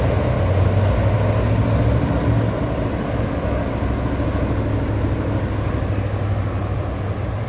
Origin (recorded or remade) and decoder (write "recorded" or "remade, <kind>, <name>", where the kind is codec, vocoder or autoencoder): recorded